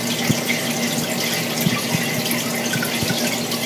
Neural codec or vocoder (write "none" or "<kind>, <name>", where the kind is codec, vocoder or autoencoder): none